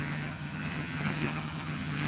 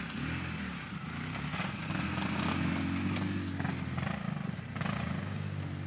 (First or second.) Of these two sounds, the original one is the second